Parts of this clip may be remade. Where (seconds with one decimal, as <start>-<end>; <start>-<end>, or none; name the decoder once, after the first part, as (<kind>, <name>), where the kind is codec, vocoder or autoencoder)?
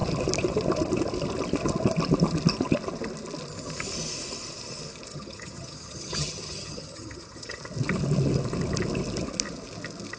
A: 5.1-7.6 (vocoder, HiFi-GAN)